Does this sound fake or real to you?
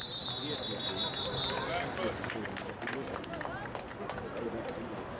real